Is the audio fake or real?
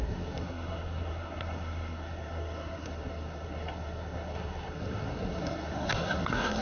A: fake